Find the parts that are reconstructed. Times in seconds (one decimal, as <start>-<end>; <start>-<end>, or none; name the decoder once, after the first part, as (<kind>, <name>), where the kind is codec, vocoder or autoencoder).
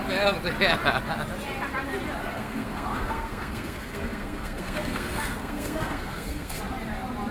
2.2-6.6 (codec, SNAC)